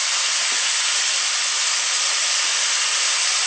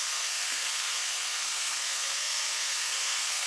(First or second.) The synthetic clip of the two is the second